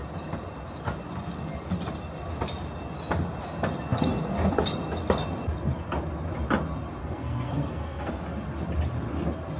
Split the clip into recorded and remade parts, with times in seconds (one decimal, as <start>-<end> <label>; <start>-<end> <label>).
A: 0.0-7.0 recorded; 7.0-8.2 remade; 8.2-9.6 recorded